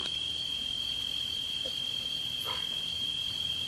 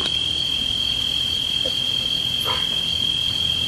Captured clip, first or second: second